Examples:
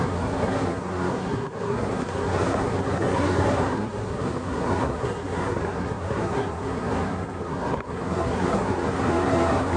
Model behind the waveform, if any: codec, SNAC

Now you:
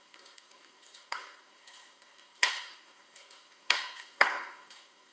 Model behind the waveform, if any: codec, SNAC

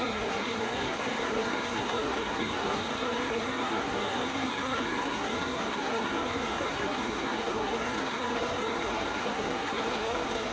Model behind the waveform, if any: codec, SNAC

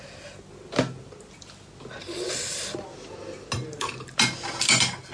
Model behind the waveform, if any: none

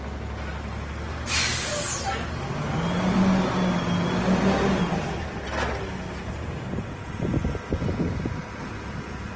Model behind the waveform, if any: none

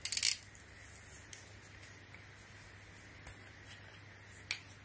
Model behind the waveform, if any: none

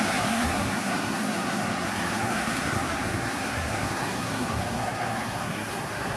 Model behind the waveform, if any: codec, SNAC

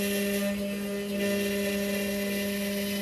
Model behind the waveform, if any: none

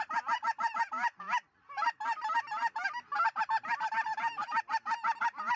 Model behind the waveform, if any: none